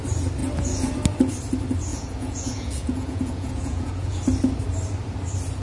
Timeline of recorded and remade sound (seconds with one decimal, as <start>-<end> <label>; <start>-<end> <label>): 0.0-1.9 recorded; 1.9-4.2 remade; 4.2-5.6 recorded